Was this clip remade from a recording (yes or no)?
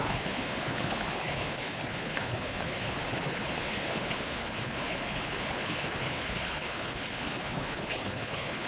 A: yes